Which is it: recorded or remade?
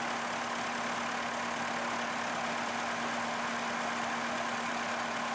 recorded